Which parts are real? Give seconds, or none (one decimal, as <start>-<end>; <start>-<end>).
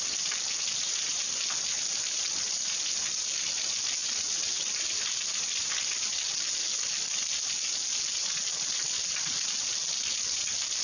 0.0-10.8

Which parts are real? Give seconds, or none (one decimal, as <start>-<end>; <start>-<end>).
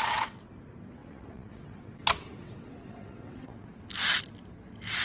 0.5-1.0; 3.9-5.0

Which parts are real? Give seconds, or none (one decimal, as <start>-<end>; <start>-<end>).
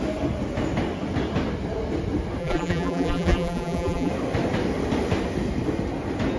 0.0-2.4; 4.1-6.4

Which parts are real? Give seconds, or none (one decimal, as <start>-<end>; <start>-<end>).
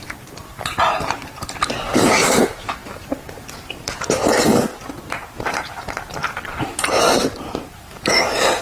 none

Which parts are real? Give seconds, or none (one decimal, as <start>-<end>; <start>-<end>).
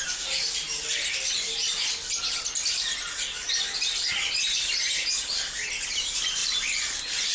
0.0-6.4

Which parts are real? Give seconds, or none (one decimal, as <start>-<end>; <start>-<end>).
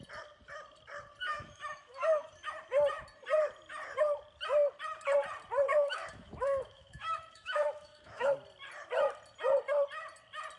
0.0-1.3; 2.3-5.7; 8.3-10.6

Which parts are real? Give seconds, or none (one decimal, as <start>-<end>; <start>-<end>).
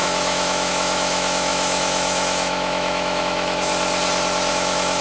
3.7-4.5